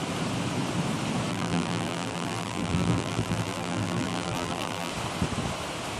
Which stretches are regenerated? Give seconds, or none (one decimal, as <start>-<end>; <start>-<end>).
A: 1.3-4.9